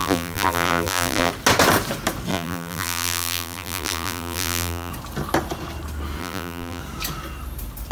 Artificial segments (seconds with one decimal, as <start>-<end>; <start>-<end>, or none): 0.0-1.3; 2.3-4.9; 6.2-6.8